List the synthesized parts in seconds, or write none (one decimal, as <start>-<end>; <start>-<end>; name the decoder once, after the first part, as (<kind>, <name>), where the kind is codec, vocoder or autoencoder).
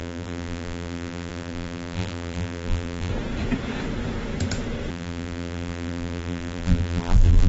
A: 0.0-3.1 (vocoder, BigVGAN v2); 4.9-7.5